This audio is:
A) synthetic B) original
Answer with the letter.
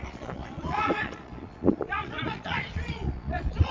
A